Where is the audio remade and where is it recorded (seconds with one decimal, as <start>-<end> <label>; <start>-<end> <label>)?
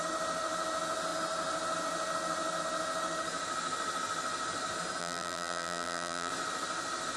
0.0-5.0 recorded; 5.0-6.3 remade; 6.3-7.2 recorded